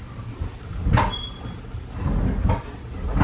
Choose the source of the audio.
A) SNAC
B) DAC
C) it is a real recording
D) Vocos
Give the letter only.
C